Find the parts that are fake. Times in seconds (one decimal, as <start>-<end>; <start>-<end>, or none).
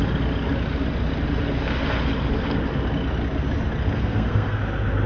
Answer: 4.0-4.6